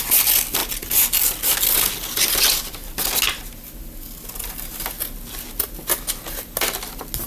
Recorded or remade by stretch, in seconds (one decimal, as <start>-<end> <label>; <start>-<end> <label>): 0.0-7.3 recorded